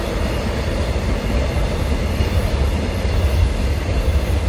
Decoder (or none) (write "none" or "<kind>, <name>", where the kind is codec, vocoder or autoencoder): none